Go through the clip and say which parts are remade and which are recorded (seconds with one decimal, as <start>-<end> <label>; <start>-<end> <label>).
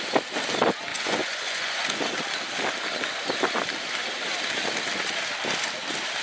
0.0-0.9 recorded; 0.9-2.0 remade; 2.0-6.2 recorded